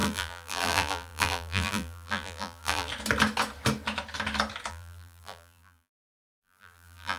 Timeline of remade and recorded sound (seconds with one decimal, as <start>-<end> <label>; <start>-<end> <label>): 0.0-2.9 remade; 2.9-4.7 recorded; 4.7-7.2 remade